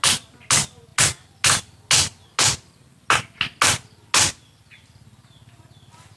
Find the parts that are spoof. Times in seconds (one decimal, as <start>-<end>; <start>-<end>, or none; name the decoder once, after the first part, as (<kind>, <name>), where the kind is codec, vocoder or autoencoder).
none